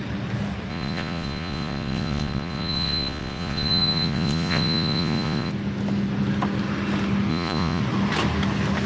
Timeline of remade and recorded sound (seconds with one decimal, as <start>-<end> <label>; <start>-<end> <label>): 0.0-0.7 recorded; 0.7-5.5 remade; 5.5-7.3 recorded; 7.3-7.8 remade; 7.8-8.9 recorded